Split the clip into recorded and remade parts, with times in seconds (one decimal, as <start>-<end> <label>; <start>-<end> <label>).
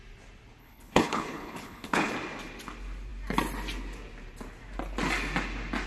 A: 0.0-0.6 recorded; 0.6-2.1 remade; 2.1-5.9 recorded